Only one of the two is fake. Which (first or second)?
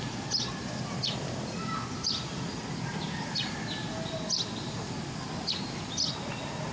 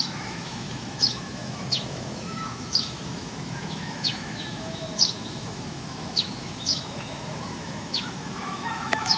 second